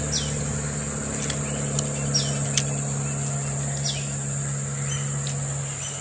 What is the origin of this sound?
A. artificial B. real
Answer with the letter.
B